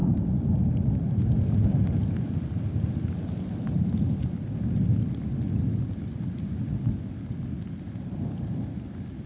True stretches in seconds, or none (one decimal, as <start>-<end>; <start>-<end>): 0.0-9.3